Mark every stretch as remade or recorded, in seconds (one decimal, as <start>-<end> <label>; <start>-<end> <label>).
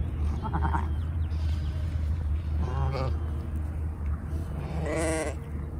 0.0-0.5 remade; 0.5-1.0 recorded; 1.0-2.4 remade; 2.4-3.8 recorded; 3.8-4.6 remade; 4.6-5.8 recorded